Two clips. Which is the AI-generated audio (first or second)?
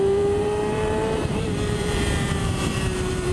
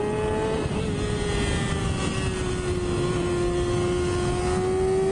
first